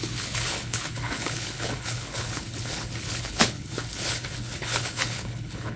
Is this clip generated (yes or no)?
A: yes